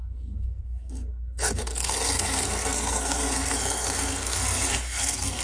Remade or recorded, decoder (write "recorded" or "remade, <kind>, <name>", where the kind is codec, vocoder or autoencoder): remade, codec, SNAC